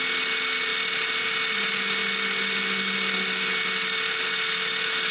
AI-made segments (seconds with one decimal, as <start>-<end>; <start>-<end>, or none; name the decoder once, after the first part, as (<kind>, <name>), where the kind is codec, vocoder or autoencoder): none